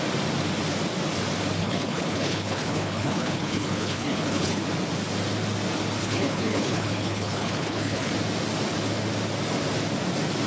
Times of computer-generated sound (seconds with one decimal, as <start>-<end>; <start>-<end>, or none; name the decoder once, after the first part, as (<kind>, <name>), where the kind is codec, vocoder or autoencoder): 1.6-4.6 (codec, HILCodec); 6.0-8.1